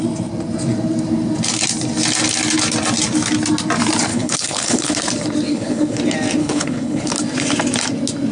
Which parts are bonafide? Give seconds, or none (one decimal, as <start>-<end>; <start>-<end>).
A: 0.0-4.1; 4.9-5.5; 6.0-6.4; 7.1-8.3